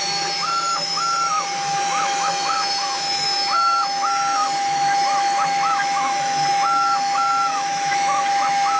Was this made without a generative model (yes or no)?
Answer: no